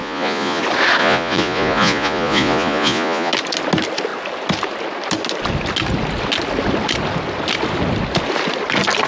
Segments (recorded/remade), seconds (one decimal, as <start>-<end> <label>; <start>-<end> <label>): 0.0-0.6 remade; 0.6-1.0 recorded; 1.0-3.3 remade; 3.3-9.1 recorded